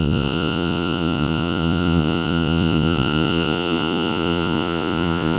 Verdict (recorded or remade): remade